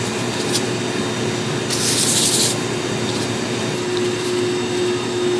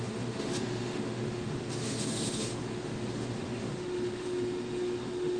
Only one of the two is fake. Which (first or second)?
second